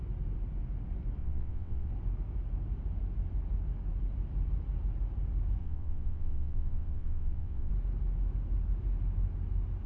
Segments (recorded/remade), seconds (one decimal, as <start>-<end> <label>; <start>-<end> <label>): 0.0-1.2 recorded; 1.2-1.9 remade; 1.9-5.6 recorded; 5.6-7.7 remade; 7.7-9.9 recorded